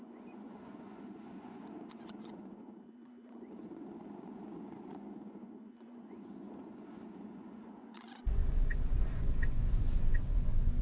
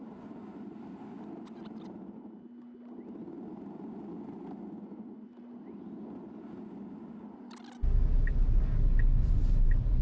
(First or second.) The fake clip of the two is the first